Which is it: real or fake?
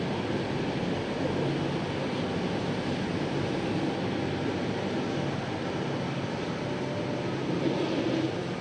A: real